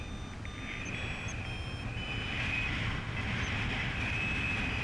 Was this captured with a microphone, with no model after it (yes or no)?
yes